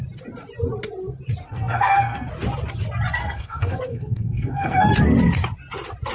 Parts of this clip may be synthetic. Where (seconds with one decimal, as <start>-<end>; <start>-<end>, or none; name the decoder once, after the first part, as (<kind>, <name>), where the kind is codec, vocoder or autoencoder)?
1.4-2.3 (codec, SNAC); 3.2-4.9